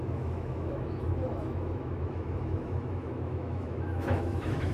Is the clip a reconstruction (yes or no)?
yes